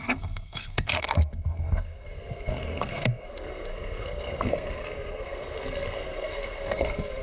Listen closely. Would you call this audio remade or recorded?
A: remade